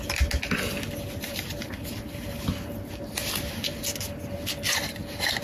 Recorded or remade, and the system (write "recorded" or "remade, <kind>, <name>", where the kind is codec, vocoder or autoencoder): recorded